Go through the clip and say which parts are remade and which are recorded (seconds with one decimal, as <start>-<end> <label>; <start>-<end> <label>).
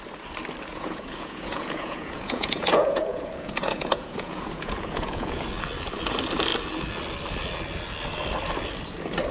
0.0-0.7 recorded; 0.7-5.5 remade; 5.5-9.3 recorded